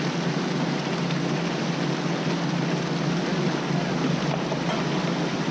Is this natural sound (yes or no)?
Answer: yes